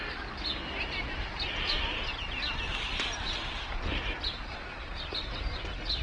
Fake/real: real